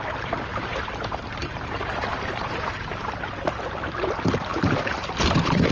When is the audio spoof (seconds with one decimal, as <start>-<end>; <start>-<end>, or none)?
0.5-3.7; 4.5-5.7